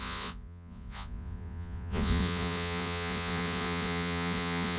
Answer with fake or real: fake